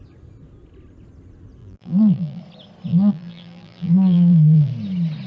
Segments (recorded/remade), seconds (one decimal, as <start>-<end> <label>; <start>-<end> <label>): 0.0-1.6 recorded; 1.6-2.4 remade; 2.4-2.9 recorded; 2.9-4.7 remade; 4.7-5.3 recorded